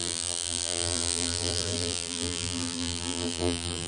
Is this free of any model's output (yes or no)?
no